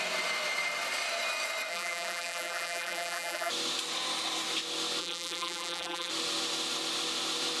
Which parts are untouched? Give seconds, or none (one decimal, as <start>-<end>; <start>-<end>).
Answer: 0.0-1.7; 3.5-5.0; 6.1-7.6